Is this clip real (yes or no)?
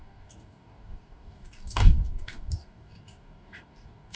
no